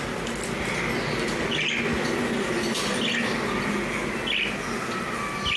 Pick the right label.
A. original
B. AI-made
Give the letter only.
A